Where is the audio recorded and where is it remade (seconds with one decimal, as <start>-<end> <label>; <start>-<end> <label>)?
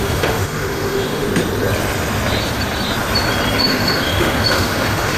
0.0-1.3 remade; 1.3-3.6 recorded; 3.6-5.2 remade